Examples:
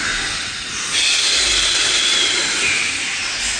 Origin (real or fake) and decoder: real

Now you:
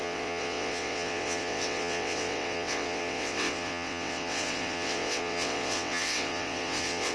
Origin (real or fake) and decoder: fake, vocoder, WaveNeXt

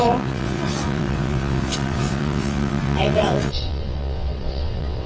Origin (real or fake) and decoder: fake, vocoder, WaveNeXt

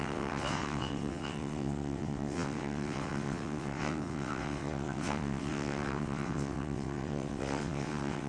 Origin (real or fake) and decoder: fake, vocoder, WaveNeXt